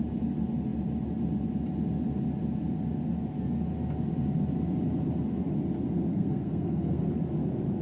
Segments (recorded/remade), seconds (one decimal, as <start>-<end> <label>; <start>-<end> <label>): 0.0-6.1 recorded; 6.1-7.1 remade; 7.1-7.8 recorded